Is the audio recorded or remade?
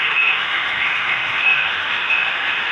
remade